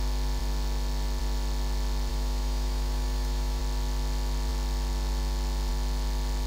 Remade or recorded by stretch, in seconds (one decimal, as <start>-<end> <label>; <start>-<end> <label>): 0.0-2.1 recorded; 2.1-3.6 remade; 3.6-6.5 recorded